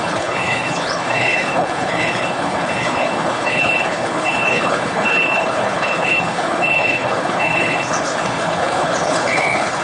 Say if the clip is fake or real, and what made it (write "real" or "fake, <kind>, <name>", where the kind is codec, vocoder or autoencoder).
fake, codec, HILCodec